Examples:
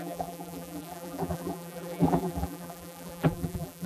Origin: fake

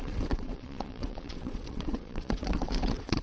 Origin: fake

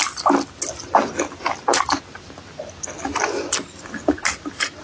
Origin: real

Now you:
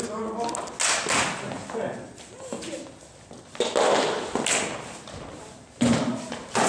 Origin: real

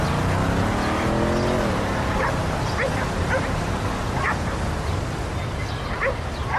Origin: real